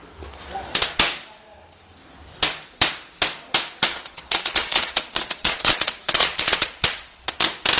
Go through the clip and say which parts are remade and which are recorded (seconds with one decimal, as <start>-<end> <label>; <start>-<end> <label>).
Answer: 0.0-3.9 recorded; 3.9-7.3 remade; 7.3-7.8 recorded